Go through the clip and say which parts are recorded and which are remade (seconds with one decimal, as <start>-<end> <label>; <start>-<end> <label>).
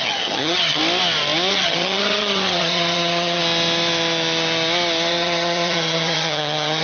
0.0-0.8 remade; 0.8-1.5 recorded; 1.5-3.4 remade; 3.4-5.1 recorded; 5.1-6.8 remade